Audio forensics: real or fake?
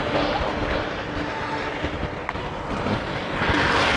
real